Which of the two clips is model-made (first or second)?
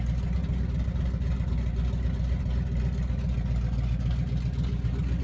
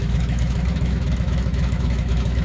second